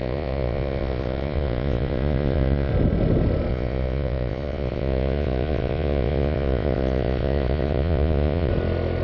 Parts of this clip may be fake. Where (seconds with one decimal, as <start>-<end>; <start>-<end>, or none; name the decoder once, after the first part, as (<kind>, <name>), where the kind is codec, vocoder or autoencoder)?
0.0-2.7 (vocoder, Vocos); 3.5-8.5